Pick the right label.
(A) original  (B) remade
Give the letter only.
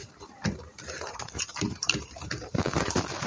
B